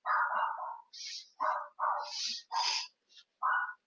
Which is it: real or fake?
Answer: real